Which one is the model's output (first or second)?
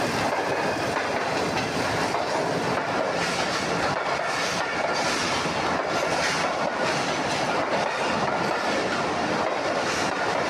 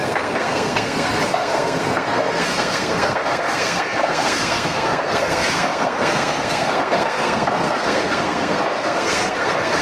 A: second